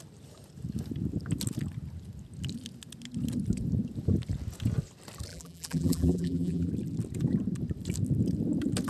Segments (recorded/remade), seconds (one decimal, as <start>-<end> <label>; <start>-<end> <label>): 0.0-5.3 recorded; 5.3-6.7 remade; 6.7-8.9 recorded